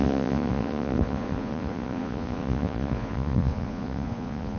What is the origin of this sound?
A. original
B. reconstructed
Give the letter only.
B